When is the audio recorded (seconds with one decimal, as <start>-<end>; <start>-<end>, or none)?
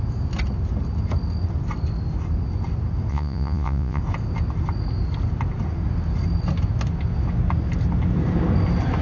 0.0-3.1; 4.0-9.0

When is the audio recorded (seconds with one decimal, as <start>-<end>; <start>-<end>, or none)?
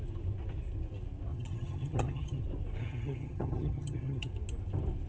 0.0-1.3; 2.4-2.8; 4.3-5.1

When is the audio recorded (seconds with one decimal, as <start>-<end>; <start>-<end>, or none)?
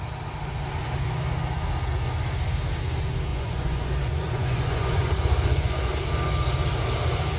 0.0-3.3; 5.9-7.4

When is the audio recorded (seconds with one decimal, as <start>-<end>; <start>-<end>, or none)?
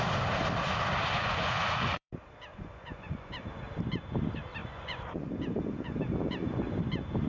0.0-1.2; 2.1-2.5; 3.4-4.6; 5.3-7.3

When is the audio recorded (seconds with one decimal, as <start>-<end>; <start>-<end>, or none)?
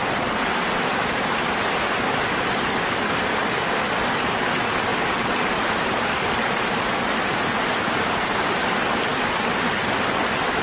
0.0-4.9; 8.4-10.6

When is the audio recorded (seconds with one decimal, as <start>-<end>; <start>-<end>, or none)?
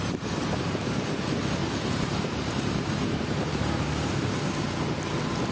0.0-1.6; 4.1-5.5